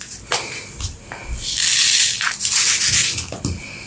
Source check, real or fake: real